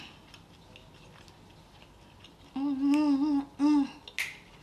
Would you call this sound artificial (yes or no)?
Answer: no